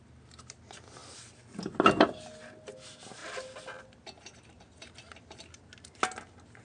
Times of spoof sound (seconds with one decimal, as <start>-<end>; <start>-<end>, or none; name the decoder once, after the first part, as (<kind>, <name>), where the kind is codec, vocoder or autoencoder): none